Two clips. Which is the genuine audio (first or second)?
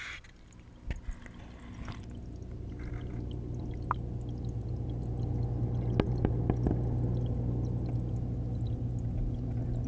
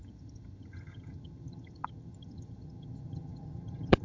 first